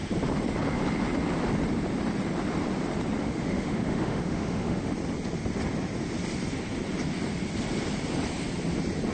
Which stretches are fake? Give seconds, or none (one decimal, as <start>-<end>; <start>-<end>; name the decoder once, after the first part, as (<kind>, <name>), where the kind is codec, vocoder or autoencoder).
3.2-4.9 (autoencoder, DAC-VAE)